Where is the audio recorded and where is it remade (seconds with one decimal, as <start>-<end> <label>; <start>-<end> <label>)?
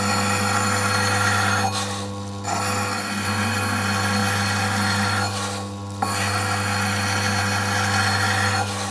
0.0-8.9 recorded